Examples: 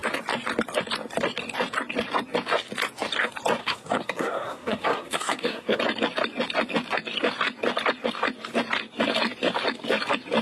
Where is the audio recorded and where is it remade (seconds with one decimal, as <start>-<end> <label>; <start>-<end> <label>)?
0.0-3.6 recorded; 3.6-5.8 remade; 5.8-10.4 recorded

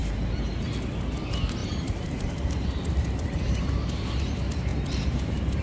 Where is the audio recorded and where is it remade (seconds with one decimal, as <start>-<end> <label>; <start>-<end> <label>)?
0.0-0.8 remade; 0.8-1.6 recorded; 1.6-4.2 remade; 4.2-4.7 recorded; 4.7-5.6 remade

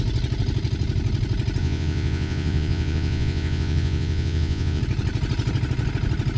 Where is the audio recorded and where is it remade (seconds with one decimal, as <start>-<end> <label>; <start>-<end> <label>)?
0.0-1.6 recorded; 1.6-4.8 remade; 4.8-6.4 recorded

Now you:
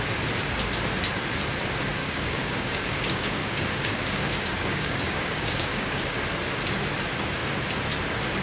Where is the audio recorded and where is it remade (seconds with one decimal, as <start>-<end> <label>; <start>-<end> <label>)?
0.0-2.0 recorded; 2.0-6.2 remade; 6.2-8.4 recorded

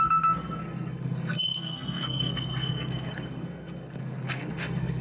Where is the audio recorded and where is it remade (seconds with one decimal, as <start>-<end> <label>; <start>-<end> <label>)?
0.0-5.0 remade